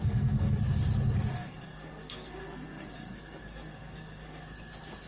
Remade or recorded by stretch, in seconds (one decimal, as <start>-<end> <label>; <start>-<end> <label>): 0.0-0.6 remade; 0.6-1.3 recorded; 1.3-4.4 remade; 4.4-5.1 recorded